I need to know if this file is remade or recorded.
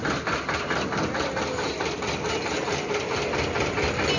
recorded